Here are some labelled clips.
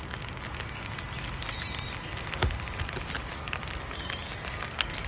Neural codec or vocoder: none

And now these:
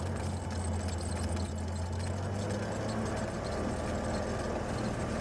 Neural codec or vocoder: none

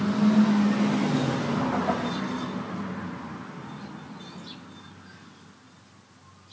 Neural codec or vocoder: none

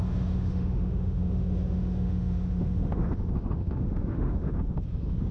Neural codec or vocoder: autoencoder, DAC-VAE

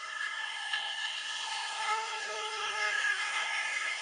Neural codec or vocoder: codec, SNAC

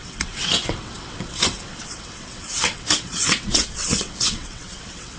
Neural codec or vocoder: vocoder, WaveNeXt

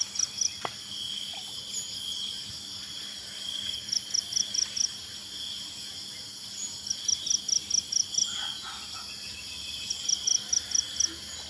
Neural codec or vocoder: none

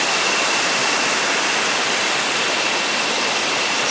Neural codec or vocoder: vocoder, BigVGAN v2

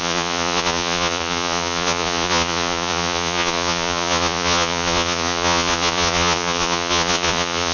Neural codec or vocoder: vocoder, Vocos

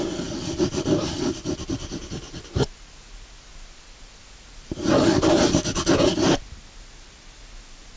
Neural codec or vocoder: none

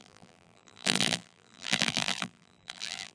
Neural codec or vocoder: vocoder, BigVGAN v2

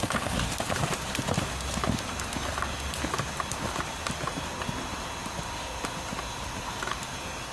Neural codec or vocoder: none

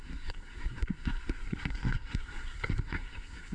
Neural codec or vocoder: codec, SNAC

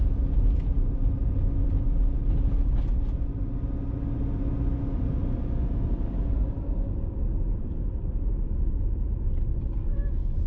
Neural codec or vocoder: none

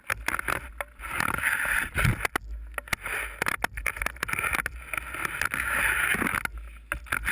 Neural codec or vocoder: none